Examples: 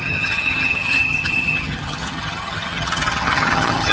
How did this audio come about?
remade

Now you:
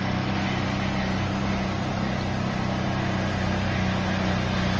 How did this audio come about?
recorded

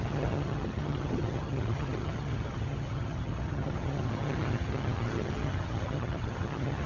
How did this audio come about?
remade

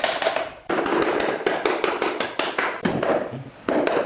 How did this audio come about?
recorded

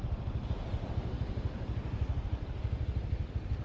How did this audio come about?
recorded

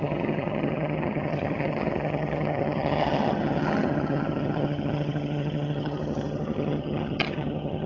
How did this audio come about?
remade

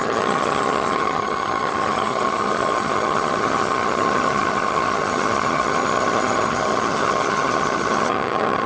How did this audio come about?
remade